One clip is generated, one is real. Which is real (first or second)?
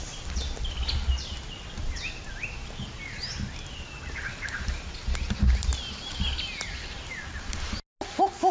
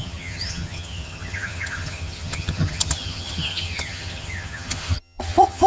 first